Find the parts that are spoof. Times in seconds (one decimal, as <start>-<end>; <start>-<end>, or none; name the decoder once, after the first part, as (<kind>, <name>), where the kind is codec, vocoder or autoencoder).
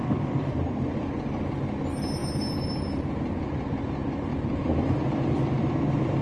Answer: 2.2-3.2 (vocoder, BigVGAN v2); 4.3-4.8